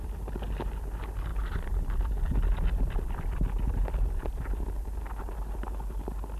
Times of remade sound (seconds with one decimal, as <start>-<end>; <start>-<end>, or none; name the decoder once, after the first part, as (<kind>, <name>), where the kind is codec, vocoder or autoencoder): none